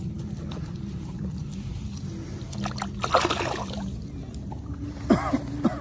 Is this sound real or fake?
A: real